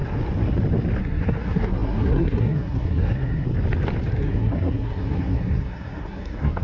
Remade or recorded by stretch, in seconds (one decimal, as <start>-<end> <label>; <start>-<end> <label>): 0.0-1.0 recorded; 1.0-3.5 remade; 3.5-4.1 recorded; 4.1-6.6 remade